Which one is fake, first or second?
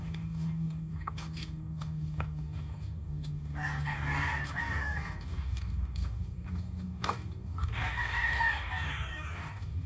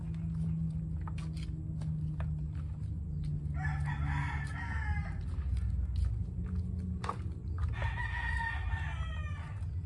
first